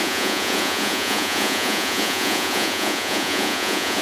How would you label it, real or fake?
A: fake